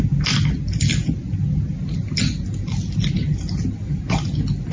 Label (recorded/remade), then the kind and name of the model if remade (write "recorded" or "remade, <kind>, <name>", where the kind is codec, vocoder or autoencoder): recorded